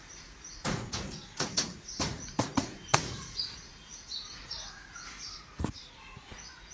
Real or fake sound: fake